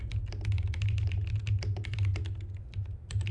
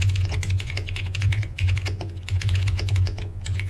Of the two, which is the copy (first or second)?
second